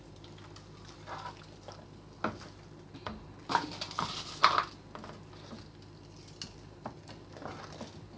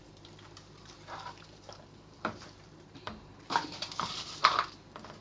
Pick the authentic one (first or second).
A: first